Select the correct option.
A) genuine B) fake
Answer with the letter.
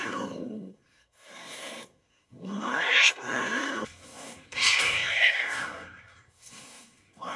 B